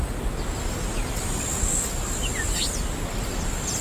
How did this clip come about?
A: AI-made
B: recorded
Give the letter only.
B